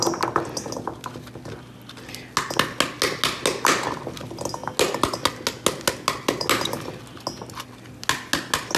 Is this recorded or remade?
recorded